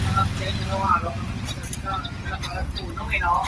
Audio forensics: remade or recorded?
recorded